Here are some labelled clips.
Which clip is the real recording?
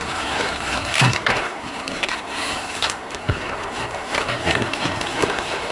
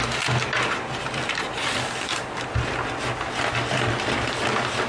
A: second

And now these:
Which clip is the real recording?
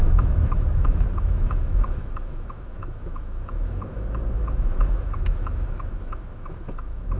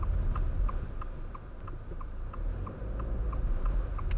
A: second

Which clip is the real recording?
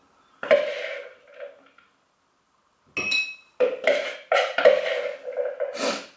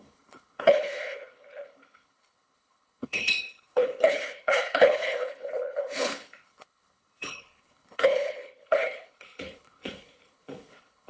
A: first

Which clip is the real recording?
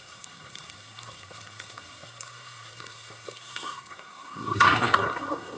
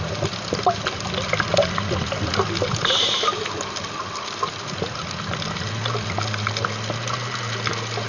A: second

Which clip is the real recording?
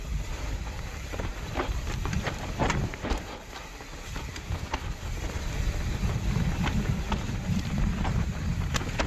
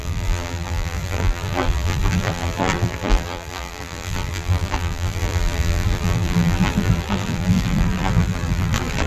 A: first